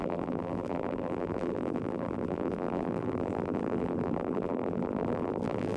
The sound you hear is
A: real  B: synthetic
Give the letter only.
B